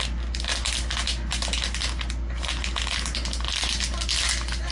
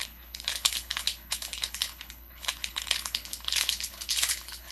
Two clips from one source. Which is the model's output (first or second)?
second